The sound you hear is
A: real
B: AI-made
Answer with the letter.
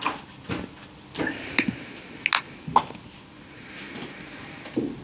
A